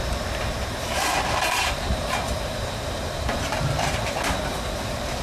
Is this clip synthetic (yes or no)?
yes